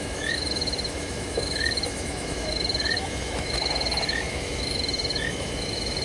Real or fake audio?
fake